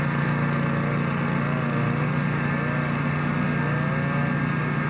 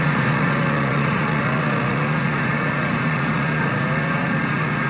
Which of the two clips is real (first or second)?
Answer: first